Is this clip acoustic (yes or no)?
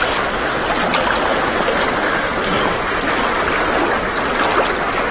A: yes